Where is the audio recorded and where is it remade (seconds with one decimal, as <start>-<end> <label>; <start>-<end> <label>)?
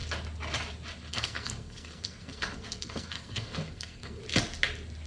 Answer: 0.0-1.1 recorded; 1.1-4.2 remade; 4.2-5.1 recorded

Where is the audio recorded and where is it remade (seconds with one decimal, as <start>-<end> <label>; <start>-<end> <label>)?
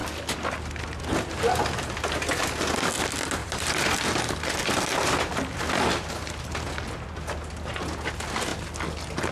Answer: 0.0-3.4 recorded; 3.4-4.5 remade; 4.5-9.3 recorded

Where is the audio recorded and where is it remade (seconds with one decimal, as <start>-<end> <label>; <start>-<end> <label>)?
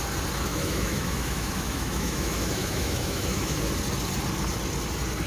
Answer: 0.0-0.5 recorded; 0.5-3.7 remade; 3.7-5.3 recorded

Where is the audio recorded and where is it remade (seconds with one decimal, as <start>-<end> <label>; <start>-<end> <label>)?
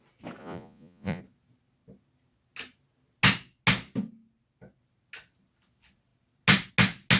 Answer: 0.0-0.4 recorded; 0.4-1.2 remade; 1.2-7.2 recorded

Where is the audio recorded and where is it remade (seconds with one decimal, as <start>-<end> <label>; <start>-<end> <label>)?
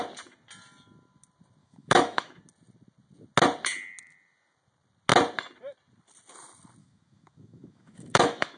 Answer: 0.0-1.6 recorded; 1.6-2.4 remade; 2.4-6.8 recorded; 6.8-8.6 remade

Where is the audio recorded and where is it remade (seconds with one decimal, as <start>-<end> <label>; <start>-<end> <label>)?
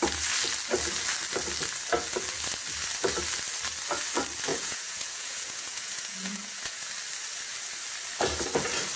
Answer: 0.0-4.5 recorded; 4.5-6.9 remade; 6.9-9.0 recorded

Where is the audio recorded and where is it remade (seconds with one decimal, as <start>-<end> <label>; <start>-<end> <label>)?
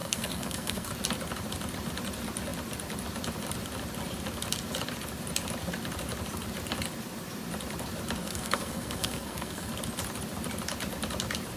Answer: 0.0-0.9 remade; 0.9-8.2 recorded; 8.2-9.7 remade; 9.7-11.6 recorded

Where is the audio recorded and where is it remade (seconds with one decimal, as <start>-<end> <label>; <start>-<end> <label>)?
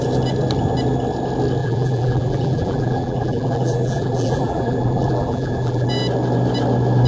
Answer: 0.0-1.6 recorded; 1.6-5.9 remade; 5.9-7.1 recorded